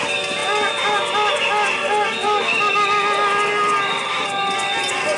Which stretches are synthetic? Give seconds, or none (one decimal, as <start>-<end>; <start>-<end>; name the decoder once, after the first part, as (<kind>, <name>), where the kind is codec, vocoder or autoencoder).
none